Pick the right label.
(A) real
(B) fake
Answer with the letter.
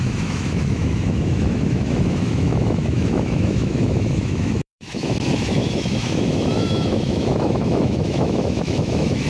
B